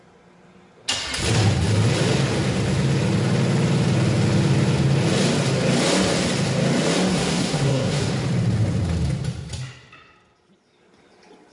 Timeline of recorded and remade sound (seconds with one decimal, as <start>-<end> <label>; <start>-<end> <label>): 0.0-7.1 recorded; 7.1-8.1 remade; 8.1-11.5 recorded